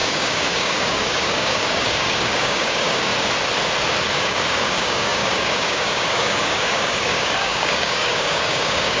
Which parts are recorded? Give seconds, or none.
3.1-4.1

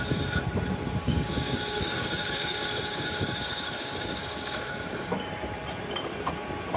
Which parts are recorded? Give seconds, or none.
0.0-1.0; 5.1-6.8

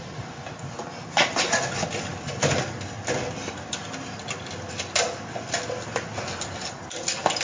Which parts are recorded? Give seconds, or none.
0.0-7.4